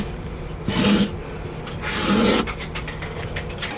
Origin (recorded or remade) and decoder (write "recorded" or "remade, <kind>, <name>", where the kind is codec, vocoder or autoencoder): recorded